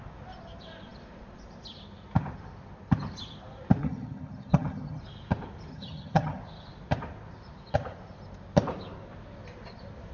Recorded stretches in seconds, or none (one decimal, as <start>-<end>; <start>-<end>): 0.0-3.8; 5.0-5.7; 6.4-10.1